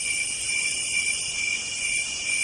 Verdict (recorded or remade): remade